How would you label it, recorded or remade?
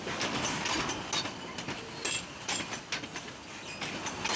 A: recorded